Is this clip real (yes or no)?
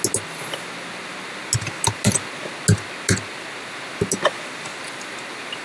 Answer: yes